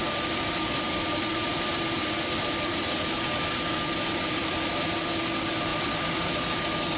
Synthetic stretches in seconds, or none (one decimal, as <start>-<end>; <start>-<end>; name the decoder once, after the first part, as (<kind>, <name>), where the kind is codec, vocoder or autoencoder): 0.0-1.1 (vocoder, BigVGAN v2); 1.5-4.7; 5.7-6.3